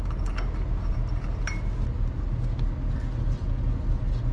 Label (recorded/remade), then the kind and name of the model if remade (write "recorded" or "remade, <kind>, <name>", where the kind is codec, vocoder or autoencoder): recorded